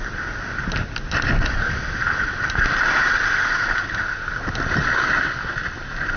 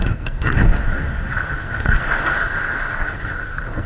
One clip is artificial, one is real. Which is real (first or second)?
first